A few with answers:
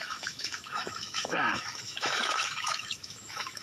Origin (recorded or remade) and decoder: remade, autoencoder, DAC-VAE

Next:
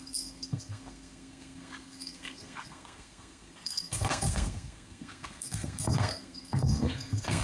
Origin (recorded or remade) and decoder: remade, codec, SNAC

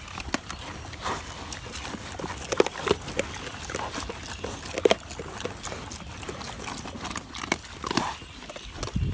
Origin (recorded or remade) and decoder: recorded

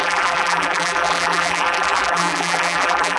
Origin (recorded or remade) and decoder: remade, vocoder, BigVGAN v2